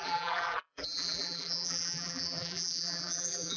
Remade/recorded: remade